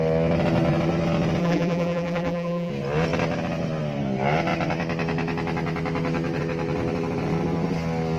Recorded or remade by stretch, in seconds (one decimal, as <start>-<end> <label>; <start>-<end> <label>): 0.0-1.4 recorded; 1.4-2.7 remade; 2.7-8.2 recorded